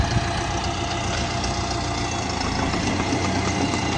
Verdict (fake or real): real